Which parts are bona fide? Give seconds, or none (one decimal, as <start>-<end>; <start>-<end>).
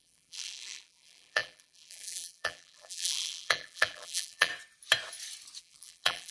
4.5-5.6